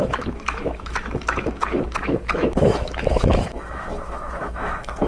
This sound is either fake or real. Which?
fake